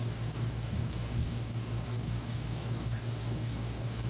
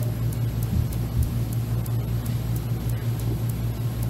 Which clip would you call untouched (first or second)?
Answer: second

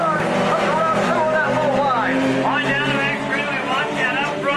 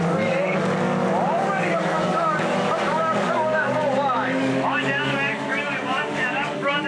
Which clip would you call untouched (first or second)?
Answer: first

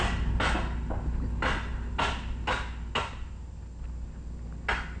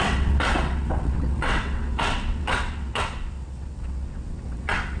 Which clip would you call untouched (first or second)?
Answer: first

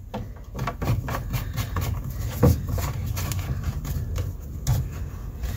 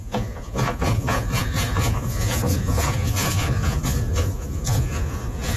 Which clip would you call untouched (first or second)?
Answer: first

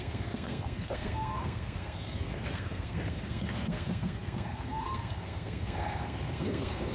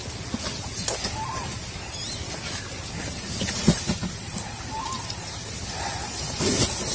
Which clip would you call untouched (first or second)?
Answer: second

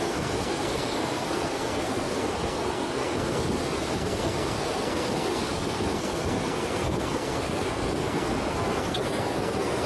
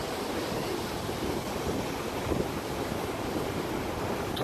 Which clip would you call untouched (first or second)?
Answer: second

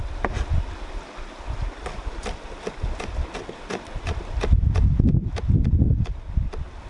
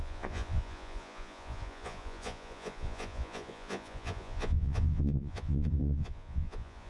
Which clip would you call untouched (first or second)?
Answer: first